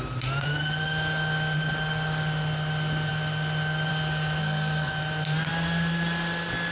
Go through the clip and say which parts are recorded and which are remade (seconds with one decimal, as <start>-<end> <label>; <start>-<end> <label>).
0.0-4.4 recorded; 4.4-4.9 remade; 4.9-6.7 recorded

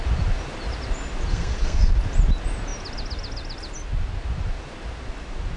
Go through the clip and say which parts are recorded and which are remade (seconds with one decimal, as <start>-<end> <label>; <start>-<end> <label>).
0.0-1.3 recorded; 1.3-1.9 remade; 1.9-5.6 recorded

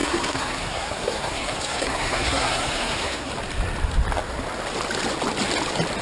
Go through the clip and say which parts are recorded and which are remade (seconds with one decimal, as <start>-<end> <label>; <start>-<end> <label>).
0.0-3.3 remade; 3.3-6.0 recorded